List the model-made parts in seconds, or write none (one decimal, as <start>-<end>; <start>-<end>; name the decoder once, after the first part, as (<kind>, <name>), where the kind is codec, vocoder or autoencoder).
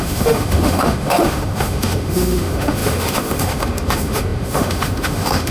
0.0-5.5 (autoencoder, DAC-VAE)